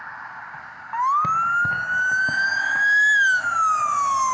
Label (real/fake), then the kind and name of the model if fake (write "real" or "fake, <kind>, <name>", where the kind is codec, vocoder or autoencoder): real